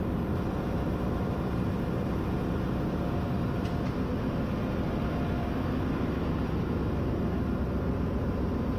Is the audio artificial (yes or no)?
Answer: no